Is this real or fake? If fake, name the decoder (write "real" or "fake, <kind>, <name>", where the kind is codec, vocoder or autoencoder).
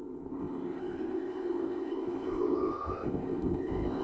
fake, codec, ZipCodec